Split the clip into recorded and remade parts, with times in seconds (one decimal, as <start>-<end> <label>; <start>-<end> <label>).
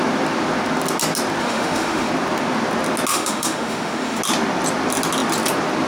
0.0-1.4 recorded; 1.4-2.1 remade; 2.1-3.1 recorded; 3.1-4.2 remade; 4.2-5.9 recorded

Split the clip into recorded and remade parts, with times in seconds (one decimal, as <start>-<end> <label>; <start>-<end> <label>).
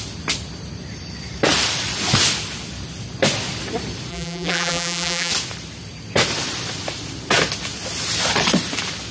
0.0-4.1 recorded; 4.1-5.3 remade; 5.3-9.1 recorded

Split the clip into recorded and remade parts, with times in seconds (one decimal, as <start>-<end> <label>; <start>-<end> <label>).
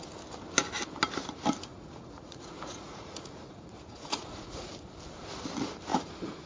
0.0-1.7 recorded; 1.7-4.7 remade; 4.7-5.9 recorded; 5.9-6.5 remade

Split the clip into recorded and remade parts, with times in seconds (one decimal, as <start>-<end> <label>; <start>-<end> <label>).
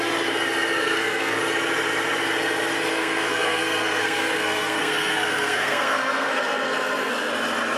0.0-0.8 recorded; 0.8-1.4 remade; 1.4-2.9 recorded; 2.9-7.3 remade; 7.3-7.8 recorded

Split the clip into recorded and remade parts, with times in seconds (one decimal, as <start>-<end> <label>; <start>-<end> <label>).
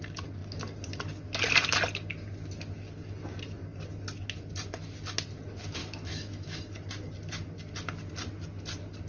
0.0-5.8 recorded; 5.8-6.6 remade; 6.6-9.1 recorded